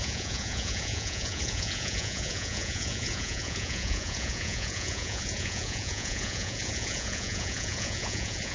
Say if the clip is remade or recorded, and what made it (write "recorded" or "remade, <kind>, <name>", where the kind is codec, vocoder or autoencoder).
remade, vocoder, Vocos